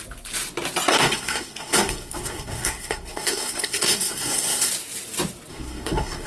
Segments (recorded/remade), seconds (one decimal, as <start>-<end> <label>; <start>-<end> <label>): 0.0-0.9 recorded; 0.9-4.7 remade; 4.7-5.5 recorded; 5.5-6.3 remade